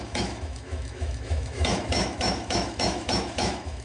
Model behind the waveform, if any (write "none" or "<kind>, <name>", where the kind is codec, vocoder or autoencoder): autoencoder, DAC-VAE